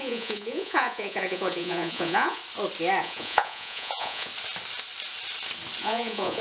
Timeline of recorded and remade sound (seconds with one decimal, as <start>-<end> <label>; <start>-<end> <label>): 0.0-2.4 remade; 2.4-3.0 recorded; 3.0-4.3 remade; 4.3-5.8 recorded; 5.8-6.4 remade